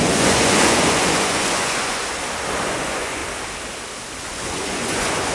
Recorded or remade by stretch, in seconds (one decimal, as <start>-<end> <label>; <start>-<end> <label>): 0.0-2.0 remade; 2.0-2.6 recorded; 2.6-3.2 remade; 3.2-4.2 recorded; 4.2-5.3 remade